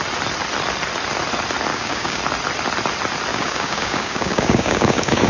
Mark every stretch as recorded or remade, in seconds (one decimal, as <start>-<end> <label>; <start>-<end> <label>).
0.0-1.7 recorded; 1.7-2.2 remade; 2.2-3.3 recorded; 3.3-5.3 remade